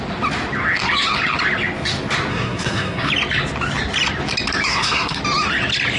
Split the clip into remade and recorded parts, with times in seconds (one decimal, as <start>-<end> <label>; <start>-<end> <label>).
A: 0.0-2.3 recorded; 2.3-3.1 remade; 3.1-4.7 recorded; 4.7-5.2 remade; 5.2-6.0 recorded